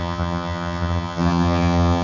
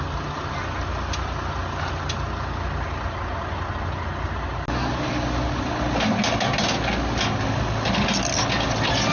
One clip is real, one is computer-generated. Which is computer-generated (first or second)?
first